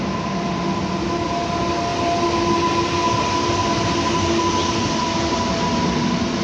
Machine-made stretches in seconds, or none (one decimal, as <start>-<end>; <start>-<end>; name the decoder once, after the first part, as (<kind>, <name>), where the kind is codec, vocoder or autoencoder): none